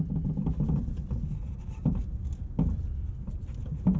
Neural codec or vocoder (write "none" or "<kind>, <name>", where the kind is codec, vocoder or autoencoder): none